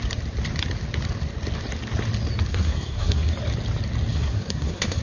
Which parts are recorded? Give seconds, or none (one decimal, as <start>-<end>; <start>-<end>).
0.0-2.5; 3.3-4.1